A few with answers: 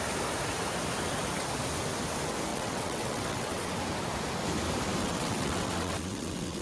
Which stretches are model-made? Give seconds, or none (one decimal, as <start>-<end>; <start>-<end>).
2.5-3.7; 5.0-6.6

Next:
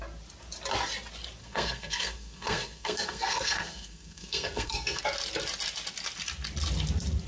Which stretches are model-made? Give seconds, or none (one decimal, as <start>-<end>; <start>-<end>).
1.4-5.0

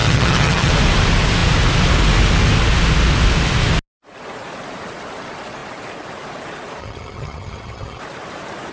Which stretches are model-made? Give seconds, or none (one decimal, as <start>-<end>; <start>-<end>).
0.0-0.7; 6.8-8.0